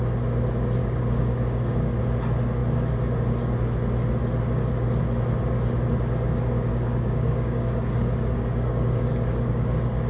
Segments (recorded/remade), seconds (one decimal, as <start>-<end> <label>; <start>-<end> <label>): 0.0-0.8 recorded; 0.8-2.0 remade; 2.0-6.7 recorded; 6.7-10.1 remade